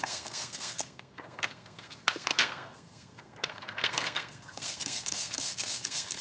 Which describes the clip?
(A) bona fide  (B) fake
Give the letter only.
B